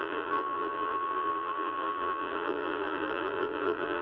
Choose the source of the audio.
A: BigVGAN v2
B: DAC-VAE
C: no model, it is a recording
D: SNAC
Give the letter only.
A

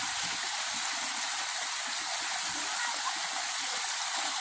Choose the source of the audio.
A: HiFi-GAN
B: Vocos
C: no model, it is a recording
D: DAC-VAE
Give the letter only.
C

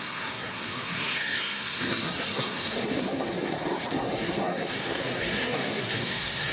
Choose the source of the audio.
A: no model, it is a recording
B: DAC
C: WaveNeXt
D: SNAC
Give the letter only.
D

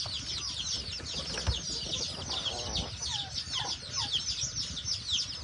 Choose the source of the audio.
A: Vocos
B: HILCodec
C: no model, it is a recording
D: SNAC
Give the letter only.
C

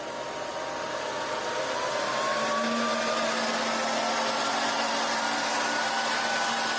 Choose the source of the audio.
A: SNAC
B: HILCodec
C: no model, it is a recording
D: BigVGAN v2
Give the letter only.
C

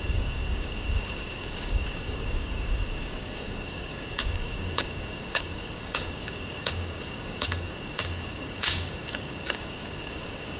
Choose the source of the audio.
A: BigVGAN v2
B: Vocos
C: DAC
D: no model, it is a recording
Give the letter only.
C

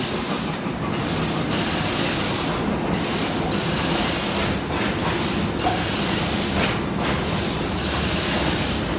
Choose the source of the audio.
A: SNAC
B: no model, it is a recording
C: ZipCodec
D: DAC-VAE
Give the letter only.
B